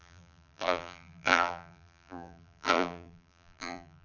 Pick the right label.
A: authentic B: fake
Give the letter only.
B